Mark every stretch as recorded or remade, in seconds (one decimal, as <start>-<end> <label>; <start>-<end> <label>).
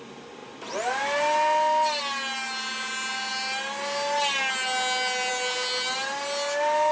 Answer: 0.0-6.9 recorded